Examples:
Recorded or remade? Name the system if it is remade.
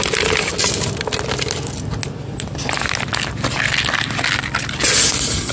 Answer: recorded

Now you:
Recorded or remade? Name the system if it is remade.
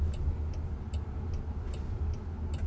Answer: recorded